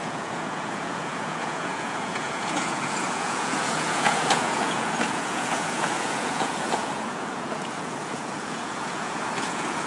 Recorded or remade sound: remade